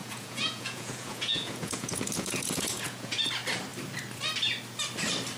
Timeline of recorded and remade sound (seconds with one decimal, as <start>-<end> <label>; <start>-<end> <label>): 0.0-3.2 remade; 3.2-5.4 recorded

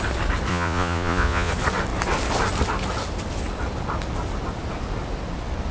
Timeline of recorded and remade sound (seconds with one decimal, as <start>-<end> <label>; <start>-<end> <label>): 0.0-0.5 recorded; 0.5-1.5 remade; 1.5-5.7 recorded

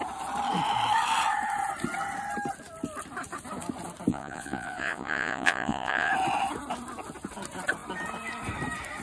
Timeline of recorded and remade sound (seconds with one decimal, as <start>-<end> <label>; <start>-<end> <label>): 0.0-4.1 recorded; 4.1-6.1 remade; 6.1-9.0 recorded